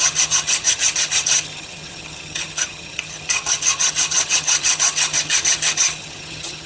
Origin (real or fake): fake